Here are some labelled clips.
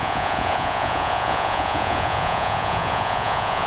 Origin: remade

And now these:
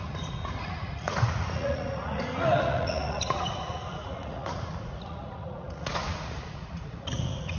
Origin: remade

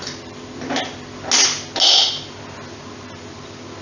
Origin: recorded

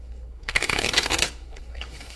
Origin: remade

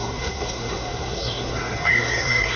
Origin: remade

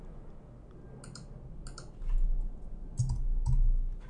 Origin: recorded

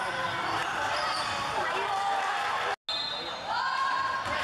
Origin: recorded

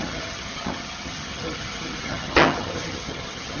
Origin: remade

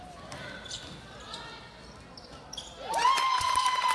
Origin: recorded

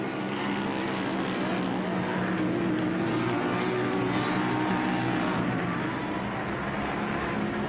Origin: recorded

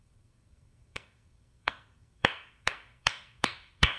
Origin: remade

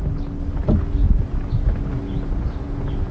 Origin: recorded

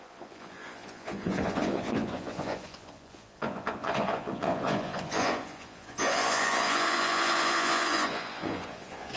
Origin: remade